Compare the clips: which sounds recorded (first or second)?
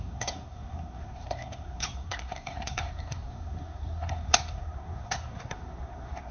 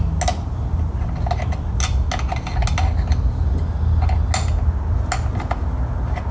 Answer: second